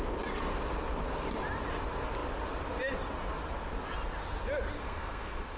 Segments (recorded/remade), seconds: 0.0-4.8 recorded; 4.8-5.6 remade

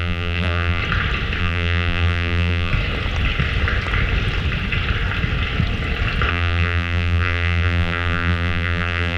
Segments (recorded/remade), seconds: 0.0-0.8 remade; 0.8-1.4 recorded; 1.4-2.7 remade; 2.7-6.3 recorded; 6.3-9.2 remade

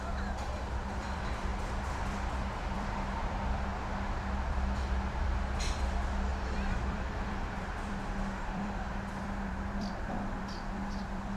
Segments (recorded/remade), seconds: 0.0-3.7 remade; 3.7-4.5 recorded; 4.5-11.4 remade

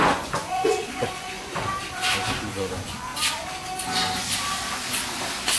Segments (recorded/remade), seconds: 0.0-1.6 remade; 1.6-2.6 recorded; 2.6-3.1 remade; 3.1-5.6 recorded